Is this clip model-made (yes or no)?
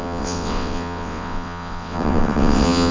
yes